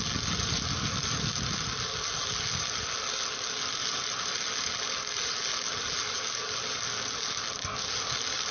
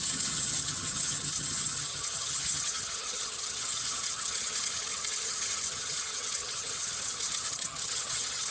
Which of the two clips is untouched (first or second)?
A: first